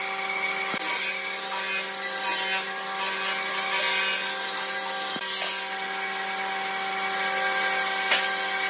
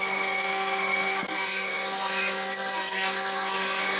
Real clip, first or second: first